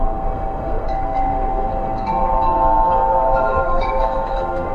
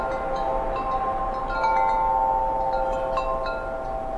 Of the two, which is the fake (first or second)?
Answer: first